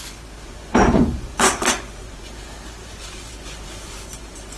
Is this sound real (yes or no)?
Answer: no